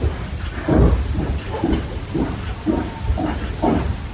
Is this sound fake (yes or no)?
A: no